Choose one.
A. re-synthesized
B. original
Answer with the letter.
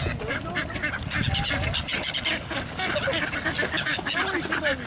B